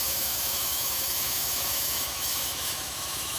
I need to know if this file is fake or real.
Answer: fake